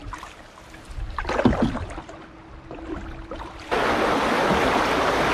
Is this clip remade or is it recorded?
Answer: recorded